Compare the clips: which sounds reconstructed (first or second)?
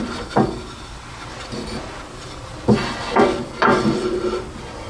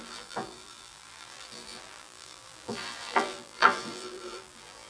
second